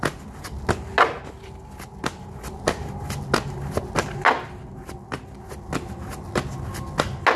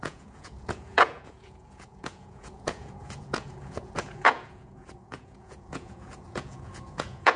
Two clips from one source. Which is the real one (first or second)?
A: first